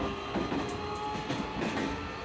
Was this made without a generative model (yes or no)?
yes